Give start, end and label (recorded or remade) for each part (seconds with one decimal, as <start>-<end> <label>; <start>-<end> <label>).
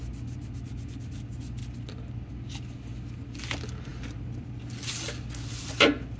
0.0-6.2 recorded